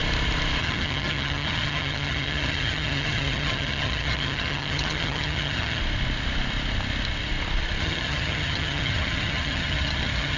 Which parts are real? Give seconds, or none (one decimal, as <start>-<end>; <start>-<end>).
0.0-0.6; 5.8-7.8